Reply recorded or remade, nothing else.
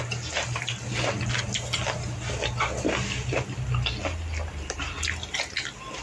recorded